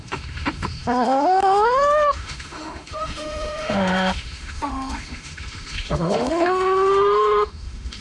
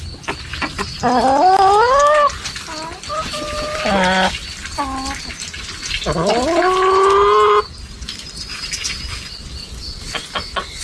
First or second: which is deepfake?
first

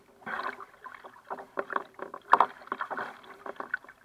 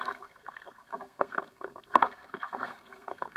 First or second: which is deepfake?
second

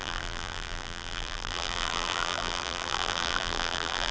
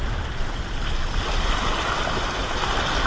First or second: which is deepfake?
first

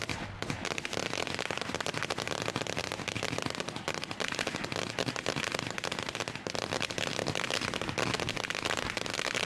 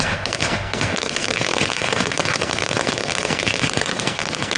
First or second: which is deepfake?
second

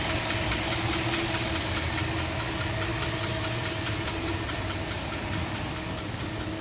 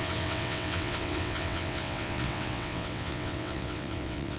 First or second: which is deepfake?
second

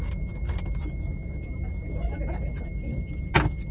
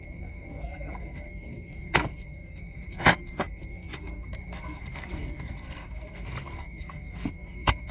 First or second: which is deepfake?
second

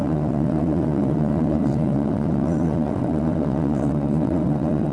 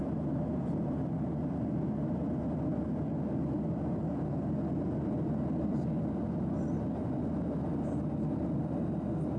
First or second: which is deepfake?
first